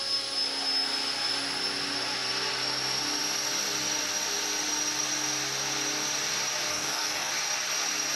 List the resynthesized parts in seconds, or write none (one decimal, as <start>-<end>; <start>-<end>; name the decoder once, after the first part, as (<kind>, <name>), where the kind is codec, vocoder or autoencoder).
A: 6.7-7.3 (codec, DAC)